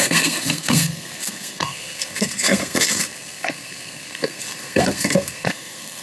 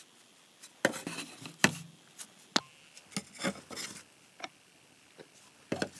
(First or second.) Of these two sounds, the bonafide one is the second